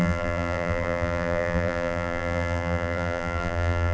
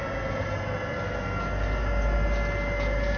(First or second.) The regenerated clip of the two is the first